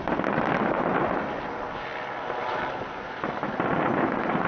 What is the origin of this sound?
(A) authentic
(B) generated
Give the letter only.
A